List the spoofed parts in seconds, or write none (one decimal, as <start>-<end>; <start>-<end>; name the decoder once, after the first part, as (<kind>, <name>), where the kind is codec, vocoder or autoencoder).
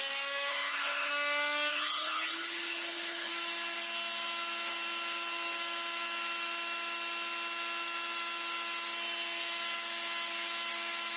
0.5-1.1 (codec, HILCodec); 1.7-3.3